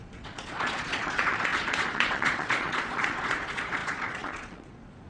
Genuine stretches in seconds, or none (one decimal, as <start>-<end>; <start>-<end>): none